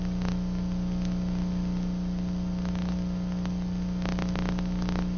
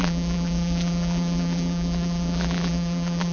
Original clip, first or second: first